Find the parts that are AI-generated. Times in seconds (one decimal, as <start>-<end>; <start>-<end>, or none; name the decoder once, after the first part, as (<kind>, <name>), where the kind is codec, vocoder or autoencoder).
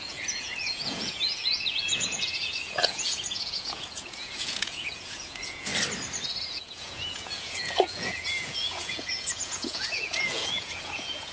0.0-5.7 (vocoder, Vocos); 6.4-11.3